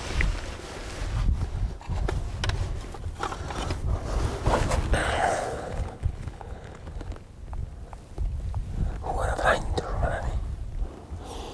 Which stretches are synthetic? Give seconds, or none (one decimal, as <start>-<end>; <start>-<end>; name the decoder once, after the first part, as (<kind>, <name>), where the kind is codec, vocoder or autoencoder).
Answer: 5.0-6.9 (codec, HILCodec)